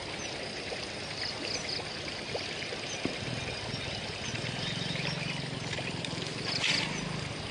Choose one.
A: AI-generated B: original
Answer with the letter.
B